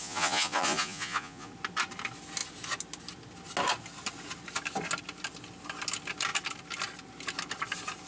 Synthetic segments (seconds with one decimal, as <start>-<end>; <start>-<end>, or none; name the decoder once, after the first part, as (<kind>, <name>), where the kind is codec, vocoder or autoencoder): 0.0-1.5 (vocoder, Vocos)